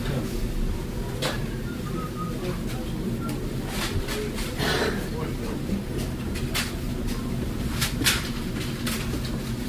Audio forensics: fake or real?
real